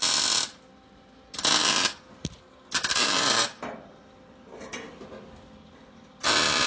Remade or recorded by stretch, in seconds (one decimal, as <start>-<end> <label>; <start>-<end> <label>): 0.0-6.7 recorded